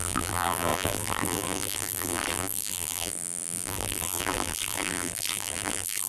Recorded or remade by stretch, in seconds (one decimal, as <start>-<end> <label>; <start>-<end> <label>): 0.0-6.1 remade